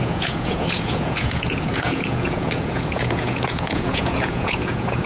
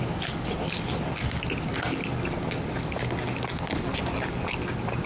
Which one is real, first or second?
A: second